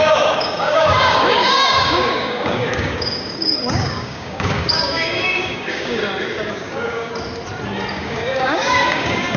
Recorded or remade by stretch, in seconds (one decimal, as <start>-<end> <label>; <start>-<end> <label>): 0.0-6.0 remade; 6.0-6.5 recorded; 6.5-7.1 remade; 7.1-7.9 recorded; 7.9-9.4 remade